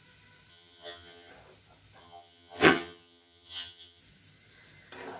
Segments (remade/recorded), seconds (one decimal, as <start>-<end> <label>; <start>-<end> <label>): 0.0-0.5 recorded; 0.5-1.3 remade; 1.3-2.0 recorded; 2.0-4.0 remade; 4.0-5.2 recorded